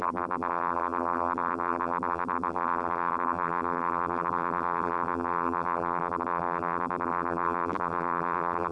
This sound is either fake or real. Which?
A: fake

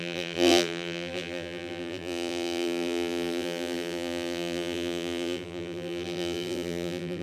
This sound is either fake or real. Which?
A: fake